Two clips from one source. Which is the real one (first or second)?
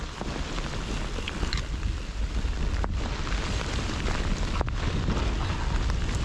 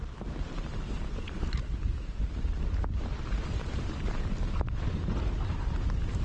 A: first